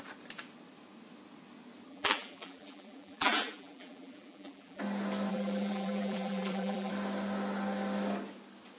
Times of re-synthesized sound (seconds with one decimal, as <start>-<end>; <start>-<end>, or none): 1.9-4.8; 5.3-6.9